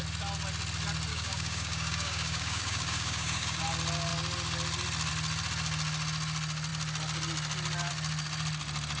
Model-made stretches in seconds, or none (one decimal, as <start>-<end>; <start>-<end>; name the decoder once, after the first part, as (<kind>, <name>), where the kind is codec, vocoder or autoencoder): 1.1-3.6 (codec, DAC)